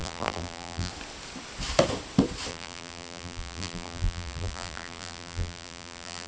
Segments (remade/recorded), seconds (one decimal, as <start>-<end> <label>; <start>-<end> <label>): 0.0-0.9 remade; 0.9-2.5 recorded; 2.5-6.3 remade

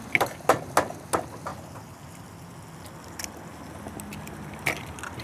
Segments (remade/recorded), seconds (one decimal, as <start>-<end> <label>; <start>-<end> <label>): 0.0-5.2 recorded

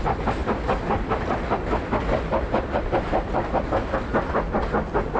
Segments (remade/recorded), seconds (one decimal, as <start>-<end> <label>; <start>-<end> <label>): 0.0-5.2 recorded

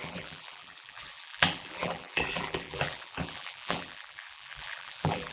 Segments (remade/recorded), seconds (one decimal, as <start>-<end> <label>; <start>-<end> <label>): 0.0-5.3 remade

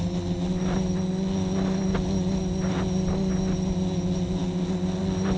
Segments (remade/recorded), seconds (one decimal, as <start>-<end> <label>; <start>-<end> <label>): 0.0-5.4 recorded